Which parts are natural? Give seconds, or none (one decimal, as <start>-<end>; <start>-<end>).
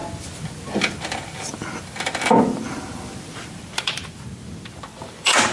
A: 0.0-2.4